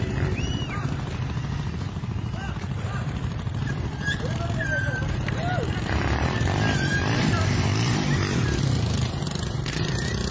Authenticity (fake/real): fake